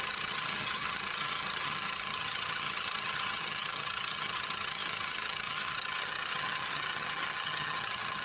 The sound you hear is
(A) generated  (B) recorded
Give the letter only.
A